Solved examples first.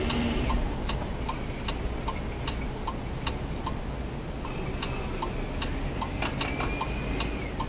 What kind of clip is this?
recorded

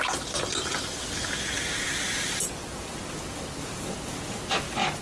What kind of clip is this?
recorded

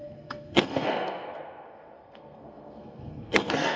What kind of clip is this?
remade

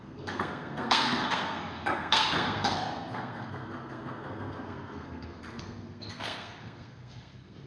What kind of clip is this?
remade